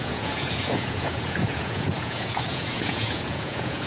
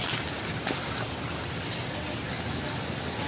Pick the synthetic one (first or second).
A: first